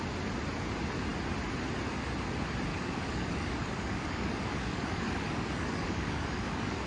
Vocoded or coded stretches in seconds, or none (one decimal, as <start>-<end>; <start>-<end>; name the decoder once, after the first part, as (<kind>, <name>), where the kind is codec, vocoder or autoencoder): 2.7-6.9 (codec, DAC)